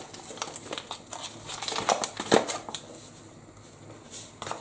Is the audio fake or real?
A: real